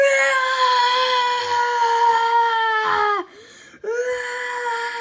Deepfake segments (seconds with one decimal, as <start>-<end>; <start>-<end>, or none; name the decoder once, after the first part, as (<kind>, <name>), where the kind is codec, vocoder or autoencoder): 0.8-1.4 (autoencoder, DAC-VAE); 2.1-3.6